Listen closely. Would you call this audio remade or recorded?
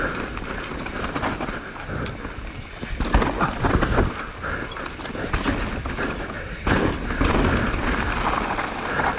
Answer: recorded